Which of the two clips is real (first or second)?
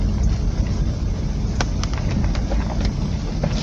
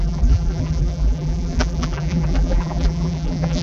first